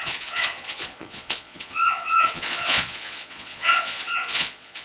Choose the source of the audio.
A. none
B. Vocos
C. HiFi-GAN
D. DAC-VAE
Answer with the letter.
B